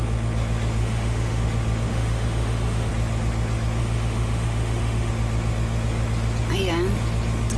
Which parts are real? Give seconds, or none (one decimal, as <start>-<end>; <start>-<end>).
0.0-0.8; 1.4-1.9; 2.9-3.8; 5.1-7.6